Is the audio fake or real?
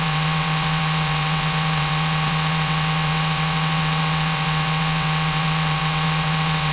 fake